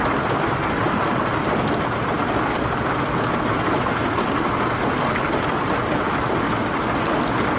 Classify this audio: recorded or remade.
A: recorded